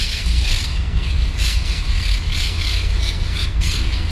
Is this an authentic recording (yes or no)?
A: no